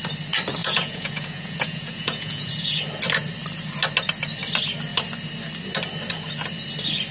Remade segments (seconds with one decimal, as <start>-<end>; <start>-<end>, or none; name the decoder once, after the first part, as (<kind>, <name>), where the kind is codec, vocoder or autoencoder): 0.6-2.8 (vocoder, Vocos)